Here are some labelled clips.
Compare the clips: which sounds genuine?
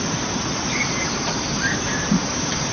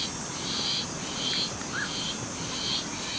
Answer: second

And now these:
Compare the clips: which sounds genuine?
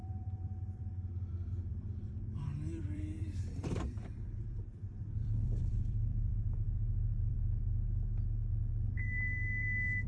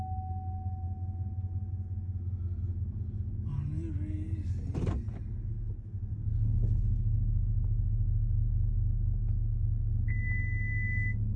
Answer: second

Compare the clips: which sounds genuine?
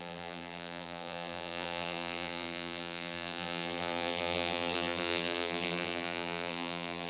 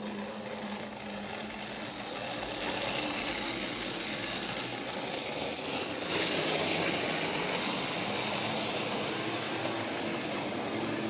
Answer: second